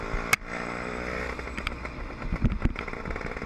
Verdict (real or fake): real